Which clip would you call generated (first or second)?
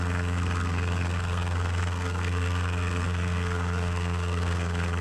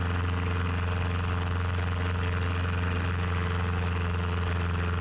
first